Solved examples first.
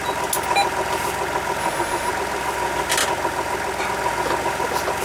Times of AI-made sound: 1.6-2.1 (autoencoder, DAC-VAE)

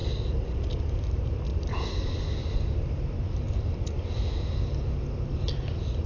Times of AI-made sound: none

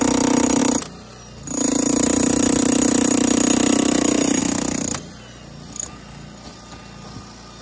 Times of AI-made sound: none

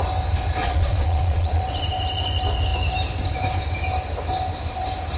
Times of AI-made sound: 0.6-1.8 (vocoder, Vocos)

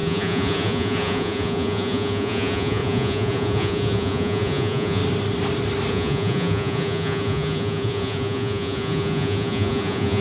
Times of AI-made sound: 0.0-5.0 (vocoder, Vocos); 5.9-10.2

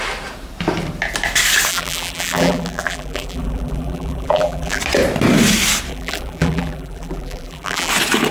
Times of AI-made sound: 1.7-4.8 (vocoder, BigVGAN v2); 5.9-7.9

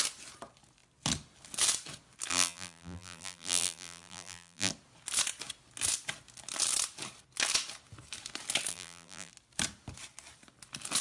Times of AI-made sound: 2.3-4.7 (vocoder, BigVGAN v2); 8.7-9.3

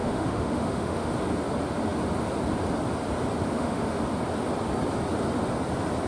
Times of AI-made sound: 0.0-1.1 (autoencoder, DAC-VAE); 3.5-4.0